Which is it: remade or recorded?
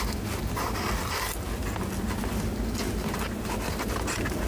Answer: recorded